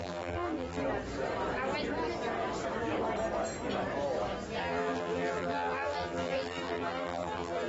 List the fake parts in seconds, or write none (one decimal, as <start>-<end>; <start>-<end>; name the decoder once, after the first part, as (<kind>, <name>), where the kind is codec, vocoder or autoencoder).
0.0-0.8 (vocoder, BigVGAN v2); 4.6-7.7